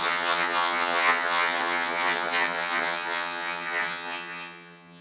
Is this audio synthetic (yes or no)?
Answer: yes